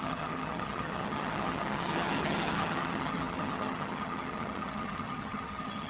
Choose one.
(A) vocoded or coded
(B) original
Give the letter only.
A